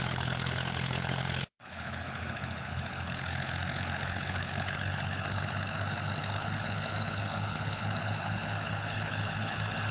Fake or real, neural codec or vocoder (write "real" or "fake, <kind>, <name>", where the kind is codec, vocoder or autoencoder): fake, codec, HILCodec